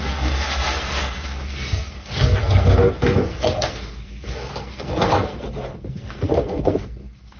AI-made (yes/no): yes